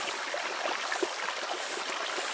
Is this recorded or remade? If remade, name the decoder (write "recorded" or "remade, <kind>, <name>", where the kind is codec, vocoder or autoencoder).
recorded